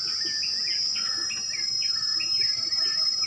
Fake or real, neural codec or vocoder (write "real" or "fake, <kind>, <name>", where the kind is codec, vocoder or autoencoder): real